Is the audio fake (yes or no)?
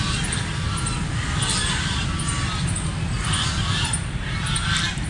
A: no